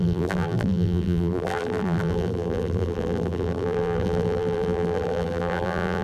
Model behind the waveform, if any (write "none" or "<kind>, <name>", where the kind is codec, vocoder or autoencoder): vocoder, BigVGAN v2